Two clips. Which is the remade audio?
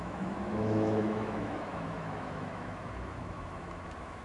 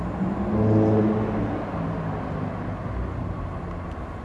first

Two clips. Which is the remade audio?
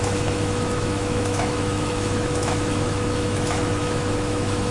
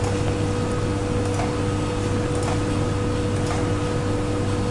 first